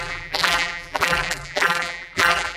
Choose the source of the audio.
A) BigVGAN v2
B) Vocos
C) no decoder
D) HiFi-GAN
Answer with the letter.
A